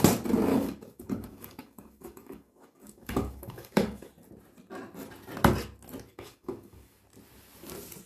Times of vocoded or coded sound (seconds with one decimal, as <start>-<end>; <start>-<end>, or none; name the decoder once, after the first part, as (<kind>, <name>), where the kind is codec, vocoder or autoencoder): 0.5-4.1 (codec, DAC); 6.1-7.0